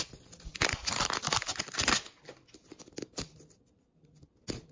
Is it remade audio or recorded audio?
recorded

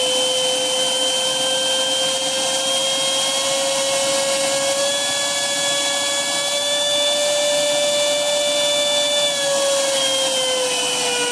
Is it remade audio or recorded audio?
recorded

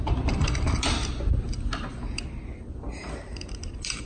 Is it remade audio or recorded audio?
recorded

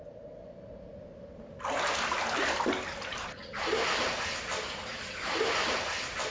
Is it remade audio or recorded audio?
recorded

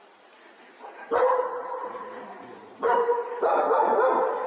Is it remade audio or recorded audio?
recorded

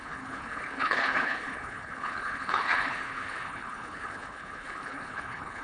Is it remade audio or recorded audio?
remade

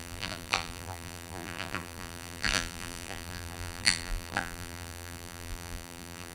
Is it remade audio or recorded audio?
remade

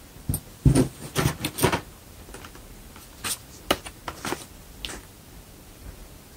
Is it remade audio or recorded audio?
recorded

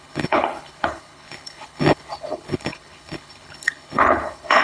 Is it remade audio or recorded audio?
remade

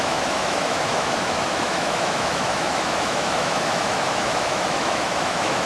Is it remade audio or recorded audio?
remade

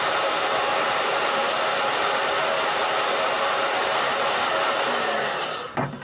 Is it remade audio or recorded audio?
recorded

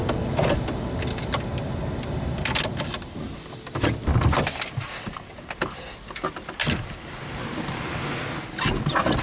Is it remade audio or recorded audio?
recorded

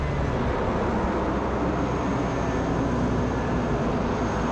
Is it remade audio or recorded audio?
recorded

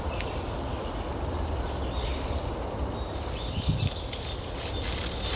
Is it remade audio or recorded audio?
recorded